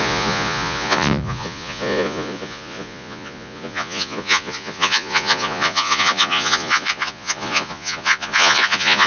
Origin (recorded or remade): remade